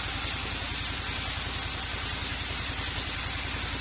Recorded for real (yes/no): yes